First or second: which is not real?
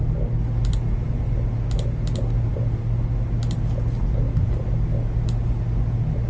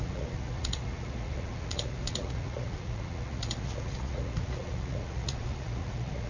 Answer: second